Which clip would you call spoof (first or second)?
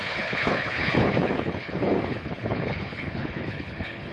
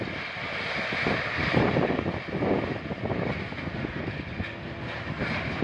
first